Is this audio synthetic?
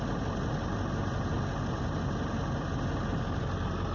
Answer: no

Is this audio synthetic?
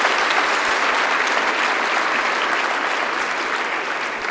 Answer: no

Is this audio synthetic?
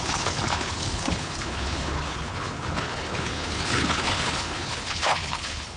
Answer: yes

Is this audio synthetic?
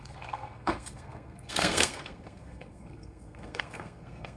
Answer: yes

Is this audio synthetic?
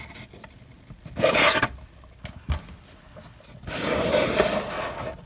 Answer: no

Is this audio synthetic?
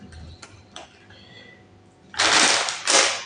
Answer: no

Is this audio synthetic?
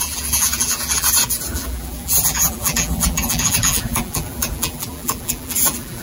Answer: yes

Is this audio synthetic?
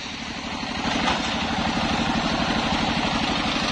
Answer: no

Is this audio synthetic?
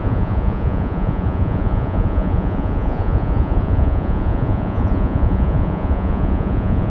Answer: yes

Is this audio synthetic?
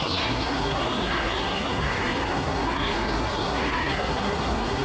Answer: yes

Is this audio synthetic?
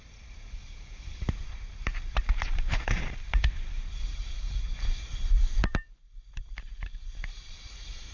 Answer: yes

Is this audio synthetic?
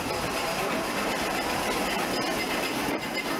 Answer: no